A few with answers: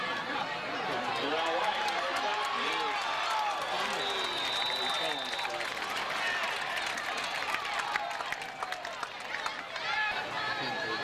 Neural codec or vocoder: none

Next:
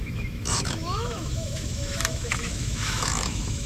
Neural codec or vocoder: autoencoder, DAC-VAE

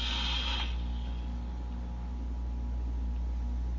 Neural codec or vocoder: none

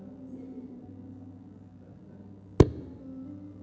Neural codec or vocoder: none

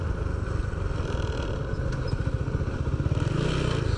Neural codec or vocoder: none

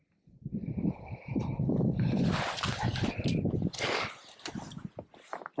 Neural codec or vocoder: none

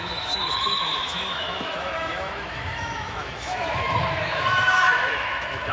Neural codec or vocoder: autoencoder, DAC-VAE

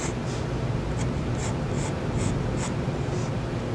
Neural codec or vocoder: none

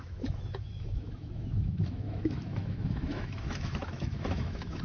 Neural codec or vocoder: autoencoder, DAC-VAE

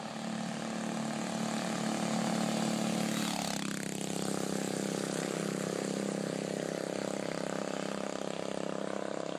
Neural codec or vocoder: none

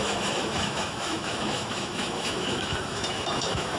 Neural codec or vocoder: autoencoder, DAC-VAE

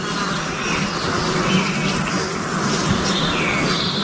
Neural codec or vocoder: none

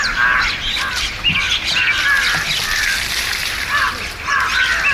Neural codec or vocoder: none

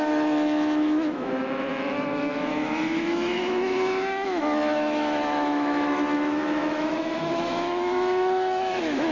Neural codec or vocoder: autoencoder, DAC-VAE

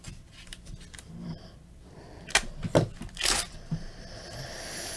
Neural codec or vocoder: none